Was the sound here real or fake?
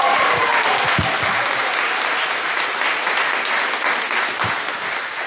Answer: real